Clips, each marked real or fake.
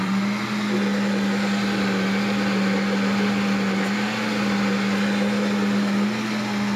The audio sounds real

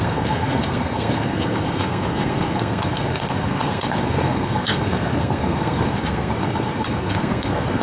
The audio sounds fake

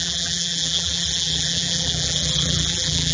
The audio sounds fake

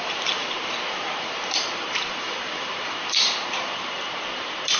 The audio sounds fake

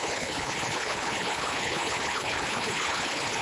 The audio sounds fake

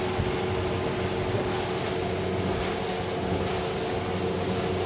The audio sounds real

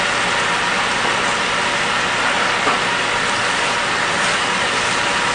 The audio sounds real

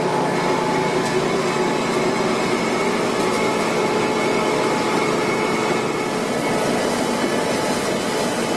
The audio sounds real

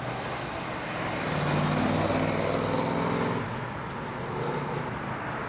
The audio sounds real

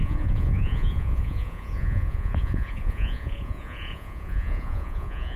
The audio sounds fake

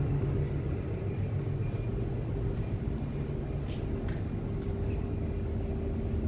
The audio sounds real